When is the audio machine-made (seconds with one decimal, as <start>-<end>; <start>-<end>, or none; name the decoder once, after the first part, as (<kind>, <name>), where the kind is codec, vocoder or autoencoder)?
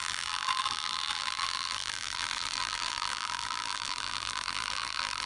0.0-5.3 (vocoder, BigVGAN v2)